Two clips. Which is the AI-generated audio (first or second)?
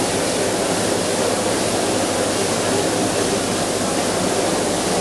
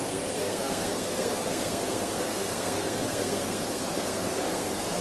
second